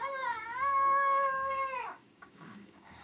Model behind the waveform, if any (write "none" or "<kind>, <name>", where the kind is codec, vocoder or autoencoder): codec, DAC